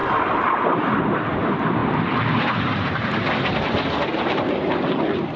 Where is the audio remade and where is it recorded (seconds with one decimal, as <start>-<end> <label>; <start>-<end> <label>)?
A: 0.0-5.4 recorded